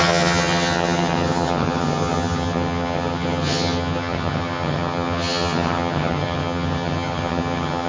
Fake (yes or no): yes